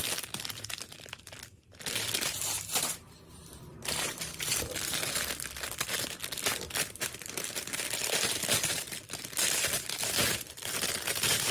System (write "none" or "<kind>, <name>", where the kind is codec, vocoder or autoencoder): vocoder, BigVGAN v2